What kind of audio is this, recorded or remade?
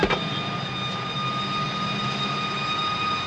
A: recorded